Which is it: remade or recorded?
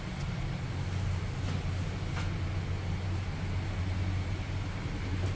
recorded